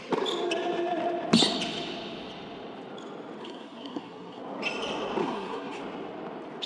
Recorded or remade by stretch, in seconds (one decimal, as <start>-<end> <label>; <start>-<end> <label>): 0.0-3.4 recorded; 3.4-4.4 remade; 4.4-5.2 recorded; 5.2-5.8 remade; 5.8-6.7 recorded